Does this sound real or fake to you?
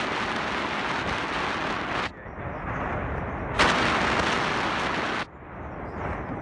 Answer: real